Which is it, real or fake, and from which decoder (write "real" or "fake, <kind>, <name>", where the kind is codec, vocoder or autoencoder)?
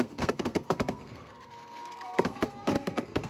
fake, codec, SNAC